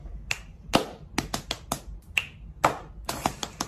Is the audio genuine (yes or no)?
yes